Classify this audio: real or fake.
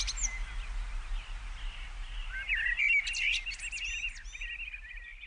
real